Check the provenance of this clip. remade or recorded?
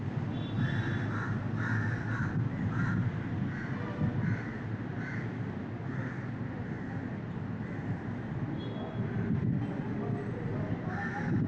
recorded